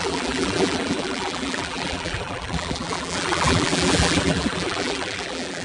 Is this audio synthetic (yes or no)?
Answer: yes